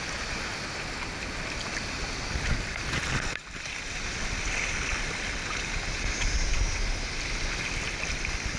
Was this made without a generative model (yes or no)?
yes